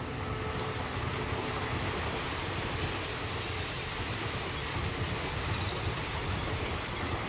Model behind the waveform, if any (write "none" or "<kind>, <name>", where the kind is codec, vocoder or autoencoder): none